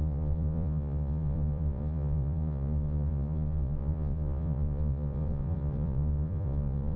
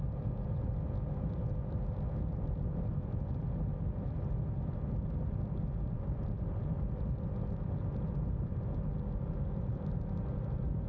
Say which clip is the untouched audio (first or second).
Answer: second